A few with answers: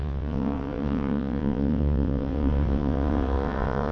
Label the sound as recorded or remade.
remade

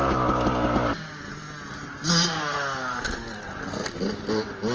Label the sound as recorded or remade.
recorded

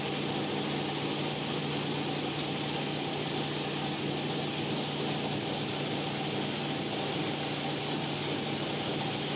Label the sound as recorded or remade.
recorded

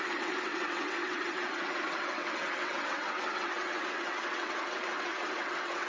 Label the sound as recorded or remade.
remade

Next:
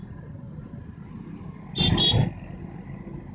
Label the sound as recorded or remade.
recorded